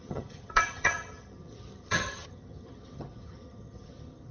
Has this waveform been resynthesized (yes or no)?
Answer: yes